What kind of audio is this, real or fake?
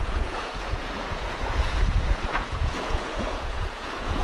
fake